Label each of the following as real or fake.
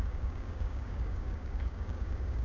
fake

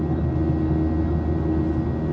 real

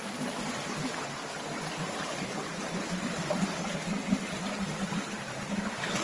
real